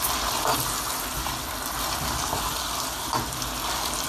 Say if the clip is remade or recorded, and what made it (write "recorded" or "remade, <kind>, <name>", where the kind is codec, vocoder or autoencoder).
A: recorded